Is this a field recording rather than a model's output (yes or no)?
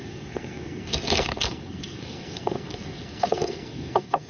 no